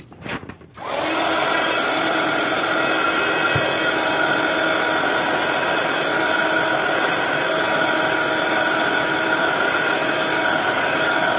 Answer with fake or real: real